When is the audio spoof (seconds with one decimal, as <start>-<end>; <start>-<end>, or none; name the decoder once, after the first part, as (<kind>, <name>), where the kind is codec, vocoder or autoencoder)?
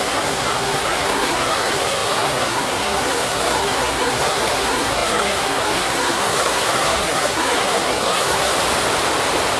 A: 0.0-8.5 (codec, SNAC)